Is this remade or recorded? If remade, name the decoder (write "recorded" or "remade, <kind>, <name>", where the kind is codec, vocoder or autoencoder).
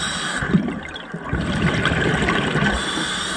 recorded